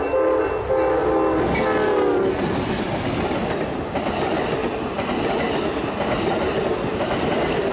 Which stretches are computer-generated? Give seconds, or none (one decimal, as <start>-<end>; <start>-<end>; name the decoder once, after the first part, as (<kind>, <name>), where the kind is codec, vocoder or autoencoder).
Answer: none